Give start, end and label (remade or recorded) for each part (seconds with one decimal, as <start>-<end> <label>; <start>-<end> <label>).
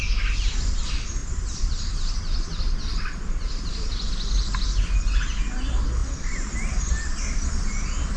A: 0.0-8.2 recorded